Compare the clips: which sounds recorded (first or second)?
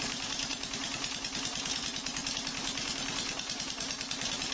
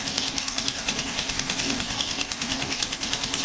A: first